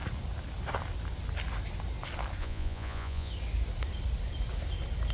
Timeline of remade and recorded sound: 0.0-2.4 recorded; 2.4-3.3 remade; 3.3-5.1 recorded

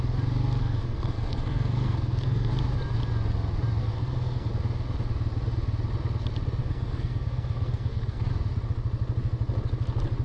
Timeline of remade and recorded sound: 0.0-0.6 recorded; 0.6-2.5 remade; 2.5-3.8 recorded; 3.8-4.5 remade; 4.5-6.6 recorded; 6.6-8.3 remade; 8.3-10.2 recorded

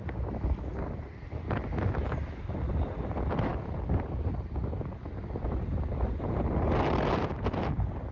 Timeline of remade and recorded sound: 0.0-8.1 recorded

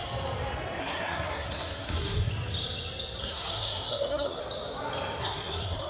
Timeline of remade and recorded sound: 0.0-0.8 recorded; 0.8-2.3 remade; 2.3-3.2 recorded; 3.2-4.4 remade; 4.4-5.2 recorded; 5.2-5.9 remade

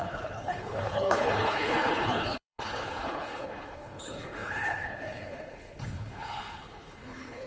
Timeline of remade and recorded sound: 0.0-7.5 remade

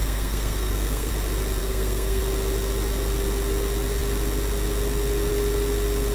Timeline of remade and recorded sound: 0.0-1.1 remade; 1.1-1.6 recorded; 1.6-2.2 remade; 2.2-6.1 recorded